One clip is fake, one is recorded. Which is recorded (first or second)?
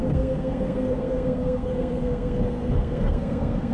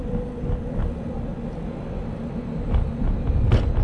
second